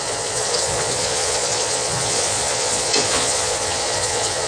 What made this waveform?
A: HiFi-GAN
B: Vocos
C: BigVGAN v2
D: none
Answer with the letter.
B